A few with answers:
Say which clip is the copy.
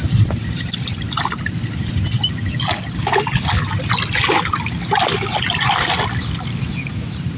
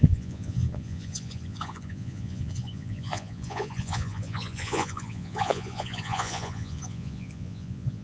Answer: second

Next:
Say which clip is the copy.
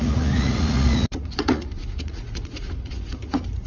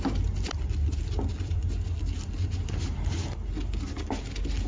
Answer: first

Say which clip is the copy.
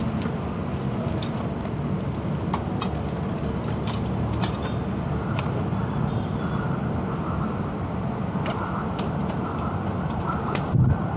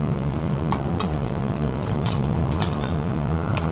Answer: second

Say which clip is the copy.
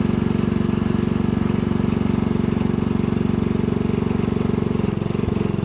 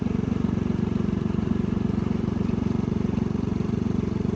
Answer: second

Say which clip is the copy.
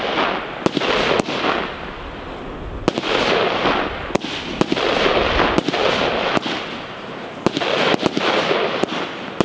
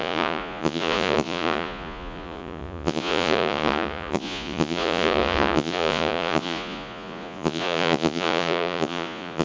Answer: second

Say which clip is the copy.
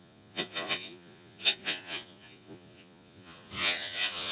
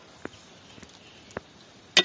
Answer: first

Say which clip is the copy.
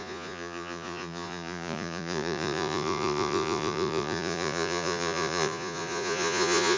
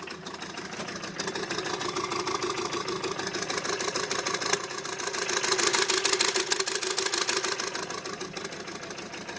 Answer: first